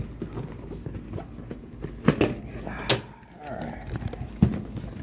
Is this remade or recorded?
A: recorded